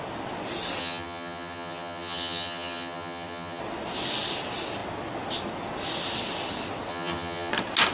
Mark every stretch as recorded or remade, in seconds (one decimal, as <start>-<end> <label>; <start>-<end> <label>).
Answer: 0.0-0.8 recorded; 0.8-3.6 remade; 3.6-6.9 recorded; 6.9-7.5 remade; 7.5-7.9 recorded

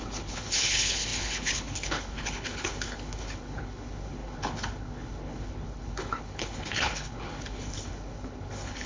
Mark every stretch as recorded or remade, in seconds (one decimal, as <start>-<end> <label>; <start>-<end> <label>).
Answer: 0.0-8.9 remade

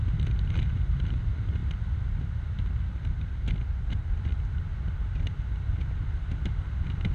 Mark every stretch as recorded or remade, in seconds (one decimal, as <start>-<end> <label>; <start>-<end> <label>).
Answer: 0.0-7.1 recorded

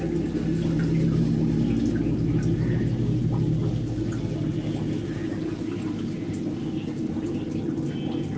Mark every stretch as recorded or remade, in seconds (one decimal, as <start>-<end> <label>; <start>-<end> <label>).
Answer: 0.0-2.1 recorded; 2.1-2.8 remade; 2.8-8.4 recorded

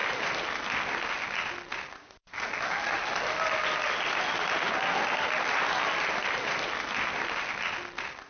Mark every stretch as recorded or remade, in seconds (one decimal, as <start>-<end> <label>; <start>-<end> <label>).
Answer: 0.0-8.3 recorded

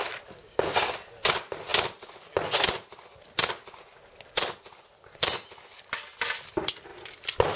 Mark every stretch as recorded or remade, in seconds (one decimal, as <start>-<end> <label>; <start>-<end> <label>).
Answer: 0.0-0.4 recorded; 0.4-0.9 remade; 0.9-7.6 recorded

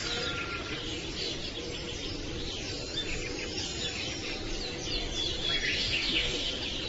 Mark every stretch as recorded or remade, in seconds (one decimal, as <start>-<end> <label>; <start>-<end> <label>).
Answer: 0.0-5.8 recorded; 5.8-6.5 remade; 6.5-6.9 recorded

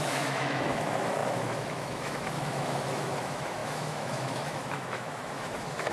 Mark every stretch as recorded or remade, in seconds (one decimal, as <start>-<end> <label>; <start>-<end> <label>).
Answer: 0.0-5.9 remade